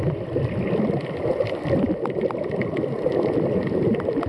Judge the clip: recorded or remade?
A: recorded